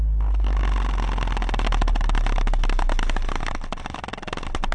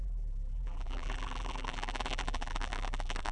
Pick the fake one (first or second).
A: second